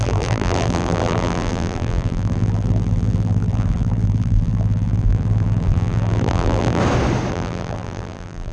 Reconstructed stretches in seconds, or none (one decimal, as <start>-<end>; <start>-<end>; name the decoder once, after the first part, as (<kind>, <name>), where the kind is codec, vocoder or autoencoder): 0.0-6.8 (vocoder, BigVGAN v2); 7.3-8.5